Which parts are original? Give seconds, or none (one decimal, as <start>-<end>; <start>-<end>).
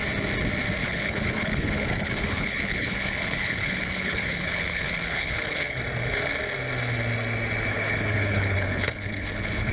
0.0-0.8; 5.8-7.7